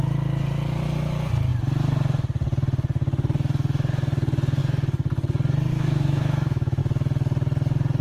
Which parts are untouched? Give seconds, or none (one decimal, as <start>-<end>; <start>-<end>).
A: 0.0-5.7; 6.8-8.0